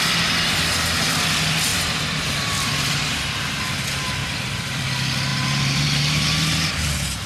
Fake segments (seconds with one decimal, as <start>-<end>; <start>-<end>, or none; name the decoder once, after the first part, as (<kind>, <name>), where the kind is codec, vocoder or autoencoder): 1.7-3.6 (vocoder, BigVGAN v2); 4.2-4.7; 5.3-6.7